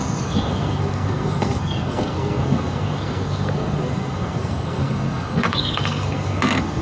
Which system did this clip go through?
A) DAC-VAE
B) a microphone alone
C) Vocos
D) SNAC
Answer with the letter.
D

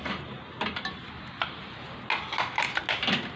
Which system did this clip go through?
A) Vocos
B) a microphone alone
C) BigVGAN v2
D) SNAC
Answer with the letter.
B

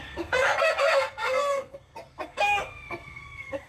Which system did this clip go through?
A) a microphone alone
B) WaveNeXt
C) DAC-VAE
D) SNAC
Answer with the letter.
D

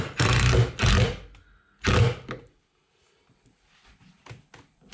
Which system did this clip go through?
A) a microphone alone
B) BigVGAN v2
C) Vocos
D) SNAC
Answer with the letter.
A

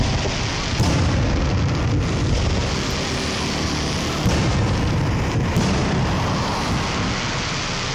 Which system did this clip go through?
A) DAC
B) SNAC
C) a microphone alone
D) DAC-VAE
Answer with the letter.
C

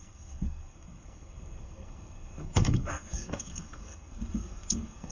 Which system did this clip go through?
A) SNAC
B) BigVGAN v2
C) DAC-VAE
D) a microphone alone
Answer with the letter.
A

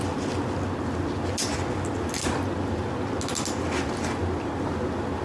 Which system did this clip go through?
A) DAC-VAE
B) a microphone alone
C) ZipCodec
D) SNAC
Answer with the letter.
B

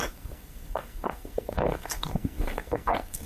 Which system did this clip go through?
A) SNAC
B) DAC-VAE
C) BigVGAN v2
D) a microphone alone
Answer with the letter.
A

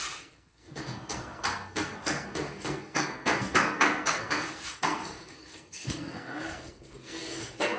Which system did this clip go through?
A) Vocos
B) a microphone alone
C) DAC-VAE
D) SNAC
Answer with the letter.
D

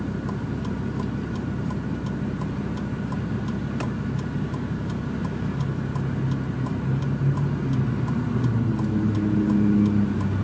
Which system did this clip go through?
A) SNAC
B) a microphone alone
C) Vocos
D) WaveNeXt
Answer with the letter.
B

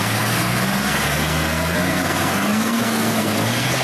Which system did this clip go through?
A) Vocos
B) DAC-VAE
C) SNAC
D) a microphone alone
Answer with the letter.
C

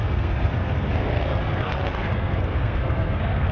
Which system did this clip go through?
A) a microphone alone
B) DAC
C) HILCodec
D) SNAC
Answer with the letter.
D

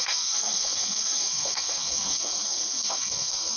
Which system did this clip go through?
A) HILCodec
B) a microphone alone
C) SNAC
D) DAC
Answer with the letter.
C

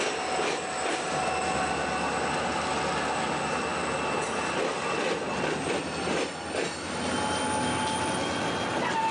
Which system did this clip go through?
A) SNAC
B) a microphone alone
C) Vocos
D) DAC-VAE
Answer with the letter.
B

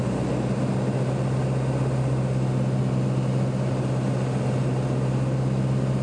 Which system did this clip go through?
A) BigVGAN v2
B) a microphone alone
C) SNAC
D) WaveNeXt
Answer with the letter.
B